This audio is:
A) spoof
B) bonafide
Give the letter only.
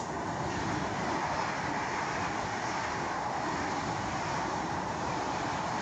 B